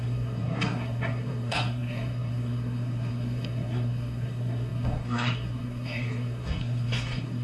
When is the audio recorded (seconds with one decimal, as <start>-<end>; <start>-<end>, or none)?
none